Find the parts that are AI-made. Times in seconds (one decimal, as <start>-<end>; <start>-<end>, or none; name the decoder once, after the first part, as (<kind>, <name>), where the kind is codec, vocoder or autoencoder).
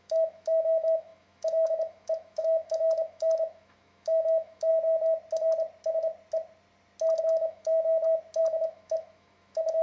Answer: 0.0-4.7 (autoencoder, DAC-VAE); 7.2-7.7; 8.4-9.8